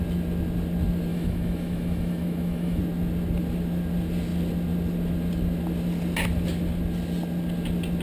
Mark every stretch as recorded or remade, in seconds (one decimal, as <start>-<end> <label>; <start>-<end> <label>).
0.0-1.1 recorded; 1.1-2.8 remade; 2.8-8.0 recorded

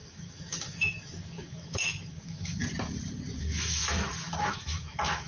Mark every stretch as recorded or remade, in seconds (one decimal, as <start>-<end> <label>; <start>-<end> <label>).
0.0-2.6 remade; 2.6-3.4 recorded; 3.4-3.8 remade; 3.8-4.5 recorded; 4.5-5.3 remade

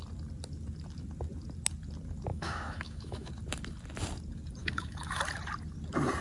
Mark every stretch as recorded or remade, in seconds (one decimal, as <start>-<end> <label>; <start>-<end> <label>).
0.0-2.3 recorded; 2.3-3.3 remade; 3.3-4.6 recorded; 4.6-5.2 remade; 5.2-6.2 recorded

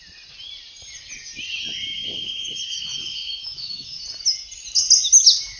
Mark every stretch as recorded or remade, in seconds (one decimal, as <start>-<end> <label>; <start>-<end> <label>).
0.0-1.9 recorded; 1.9-4.0 remade; 4.0-5.6 recorded

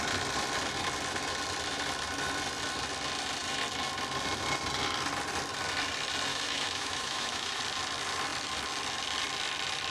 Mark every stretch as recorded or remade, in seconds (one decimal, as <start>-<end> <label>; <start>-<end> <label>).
0.0-6.3 recorded; 6.3-7.6 remade; 7.6-9.9 recorded